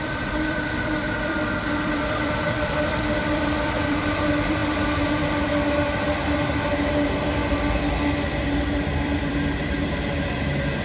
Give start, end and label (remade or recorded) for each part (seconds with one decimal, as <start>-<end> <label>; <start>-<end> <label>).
0.0-4.6 remade; 4.6-9.0 recorded; 9.0-10.8 remade